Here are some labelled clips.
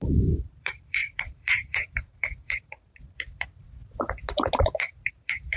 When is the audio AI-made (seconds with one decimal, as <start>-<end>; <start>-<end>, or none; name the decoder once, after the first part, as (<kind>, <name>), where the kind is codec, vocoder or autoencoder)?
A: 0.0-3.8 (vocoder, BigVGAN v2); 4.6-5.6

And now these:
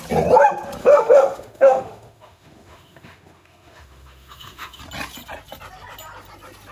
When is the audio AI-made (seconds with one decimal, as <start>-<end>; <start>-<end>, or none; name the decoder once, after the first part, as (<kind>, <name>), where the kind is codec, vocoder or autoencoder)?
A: 0.8-4.8 (autoencoder, DAC-VAE)

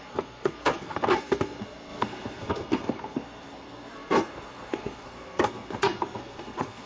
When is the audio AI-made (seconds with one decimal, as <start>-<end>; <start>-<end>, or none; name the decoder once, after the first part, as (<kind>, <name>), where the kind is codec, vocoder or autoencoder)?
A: 0.0-6.9 (codec, SNAC)